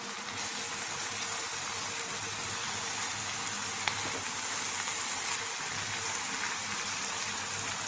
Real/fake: real